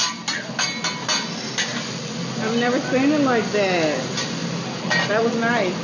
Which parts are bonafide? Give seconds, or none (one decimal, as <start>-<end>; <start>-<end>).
0.0-5.8